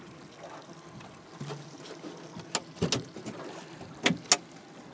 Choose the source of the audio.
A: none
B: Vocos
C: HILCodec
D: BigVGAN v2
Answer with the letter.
A